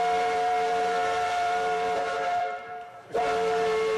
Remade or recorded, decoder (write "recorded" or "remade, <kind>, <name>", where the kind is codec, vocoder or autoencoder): remade, vocoder, BigVGAN v2